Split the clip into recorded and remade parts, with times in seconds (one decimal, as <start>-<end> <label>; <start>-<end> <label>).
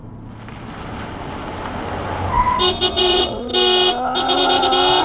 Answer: 0.0-3.0 recorded; 3.0-3.5 remade; 3.5-5.0 recorded